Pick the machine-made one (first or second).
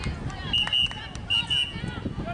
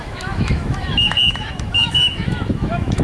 second